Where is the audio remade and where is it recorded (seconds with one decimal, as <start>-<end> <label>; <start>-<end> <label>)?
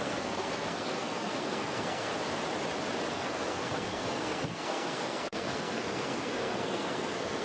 0.0-2.1 remade; 2.1-3.1 recorded; 3.1-7.4 remade